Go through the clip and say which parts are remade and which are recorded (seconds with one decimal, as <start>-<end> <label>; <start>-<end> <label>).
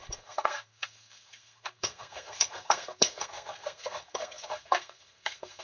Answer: 0.0-5.6 remade